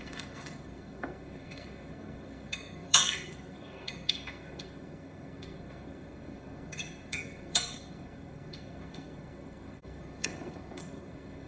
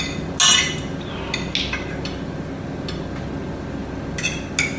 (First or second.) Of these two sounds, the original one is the second